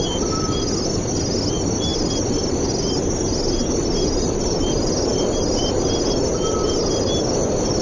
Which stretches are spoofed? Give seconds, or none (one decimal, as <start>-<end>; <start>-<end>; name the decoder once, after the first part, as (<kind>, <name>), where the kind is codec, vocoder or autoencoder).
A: none